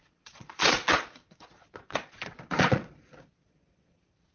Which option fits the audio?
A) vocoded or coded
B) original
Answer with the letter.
A